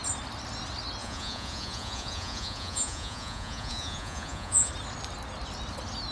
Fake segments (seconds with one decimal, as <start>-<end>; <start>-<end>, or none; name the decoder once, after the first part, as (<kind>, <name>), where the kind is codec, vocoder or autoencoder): 1.0-4.7 (vocoder, Vocos)